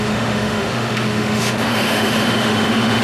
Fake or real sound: fake